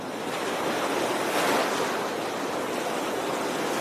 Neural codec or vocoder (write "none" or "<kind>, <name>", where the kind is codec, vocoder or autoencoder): vocoder, BigVGAN v2